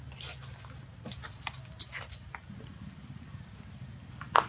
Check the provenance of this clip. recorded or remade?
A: recorded